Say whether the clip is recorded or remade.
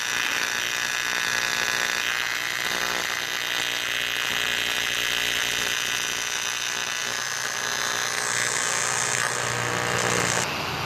recorded